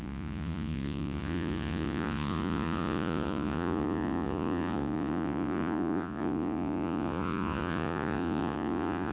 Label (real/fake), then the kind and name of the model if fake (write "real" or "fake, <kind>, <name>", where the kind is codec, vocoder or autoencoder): fake, vocoder, Vocos